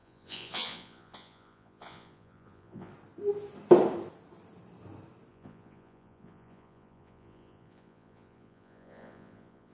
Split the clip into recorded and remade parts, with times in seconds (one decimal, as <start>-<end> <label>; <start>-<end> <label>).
0.0-2.9 remade; 2.9-5.3 recorded; 5.3-9.7 remade